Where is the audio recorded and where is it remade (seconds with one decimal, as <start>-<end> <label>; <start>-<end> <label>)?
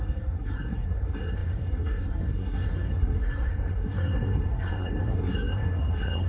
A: 0.0-6.3 remade